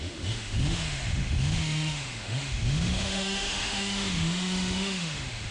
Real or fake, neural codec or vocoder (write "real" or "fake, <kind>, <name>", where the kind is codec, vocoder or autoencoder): fake, autoencoder, DAC-VAE